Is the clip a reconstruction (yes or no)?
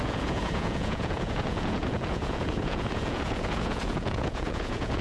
yes